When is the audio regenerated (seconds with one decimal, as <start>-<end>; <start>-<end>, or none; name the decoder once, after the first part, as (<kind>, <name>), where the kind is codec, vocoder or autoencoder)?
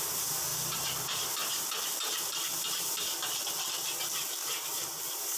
0.5-3.7 (vocoder, BigVGAN v2)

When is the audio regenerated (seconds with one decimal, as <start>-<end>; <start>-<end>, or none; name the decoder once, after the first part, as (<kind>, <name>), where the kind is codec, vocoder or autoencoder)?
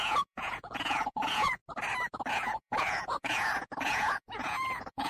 0.0-1.6 (vocoder, Vocos); 2.3-5.1